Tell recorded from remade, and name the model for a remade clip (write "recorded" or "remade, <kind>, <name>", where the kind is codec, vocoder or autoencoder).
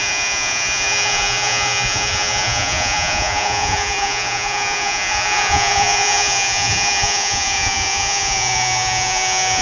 remade, vocoder, Vocos